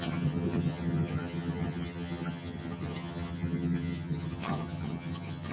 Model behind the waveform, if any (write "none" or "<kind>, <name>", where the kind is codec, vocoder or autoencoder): vocoder, HiFi-GAN